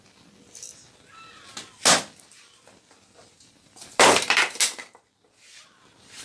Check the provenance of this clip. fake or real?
real